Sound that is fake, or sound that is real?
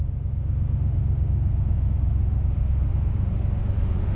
fake